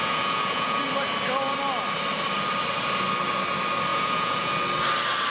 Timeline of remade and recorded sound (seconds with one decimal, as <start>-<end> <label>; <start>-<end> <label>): 0.0-0.8 remade; 0.8-3.9 recorded; 3.9-4.5 remade; 4.5-5.3 recorded